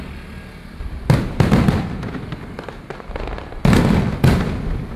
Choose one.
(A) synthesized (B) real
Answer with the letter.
B